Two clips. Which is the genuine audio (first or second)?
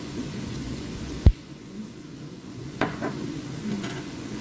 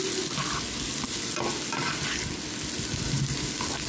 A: second